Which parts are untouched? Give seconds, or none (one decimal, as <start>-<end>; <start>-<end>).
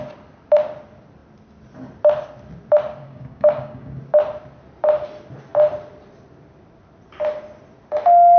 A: 0.0-3.0; 4.0-8.4